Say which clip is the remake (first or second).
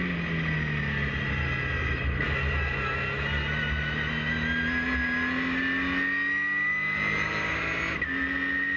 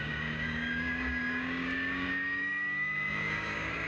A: second